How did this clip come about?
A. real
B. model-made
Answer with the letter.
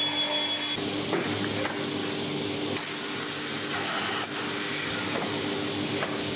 A